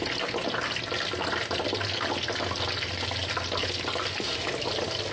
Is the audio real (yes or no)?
yes